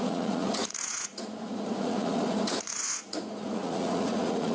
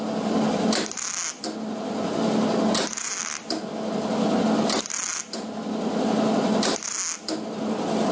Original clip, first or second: second